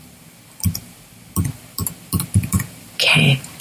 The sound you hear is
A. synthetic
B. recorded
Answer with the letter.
B